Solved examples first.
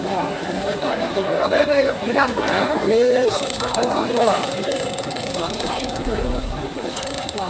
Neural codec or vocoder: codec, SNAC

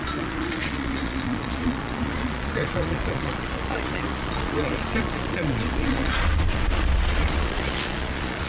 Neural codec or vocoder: vocoder, Vocos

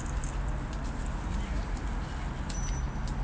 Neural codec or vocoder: none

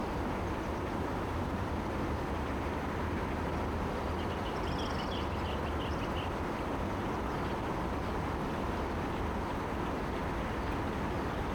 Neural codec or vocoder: none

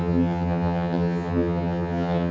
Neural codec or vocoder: vocoder, HiFi-GAN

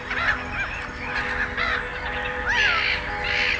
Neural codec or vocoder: none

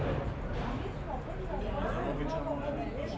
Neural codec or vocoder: none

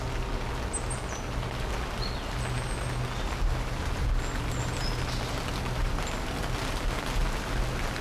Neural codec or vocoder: none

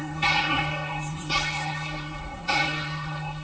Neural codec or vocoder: codec, SNAC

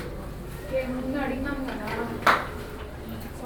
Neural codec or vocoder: none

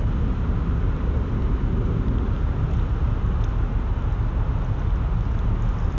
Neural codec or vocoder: none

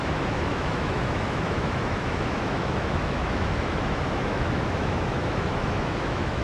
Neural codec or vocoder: autoencoder, DAC-VAE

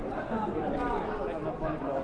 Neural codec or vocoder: none